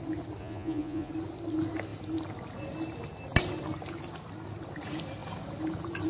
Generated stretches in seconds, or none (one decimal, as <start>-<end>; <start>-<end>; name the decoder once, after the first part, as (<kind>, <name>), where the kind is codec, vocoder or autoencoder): 0.4-1.1 (vocoder, Vocos)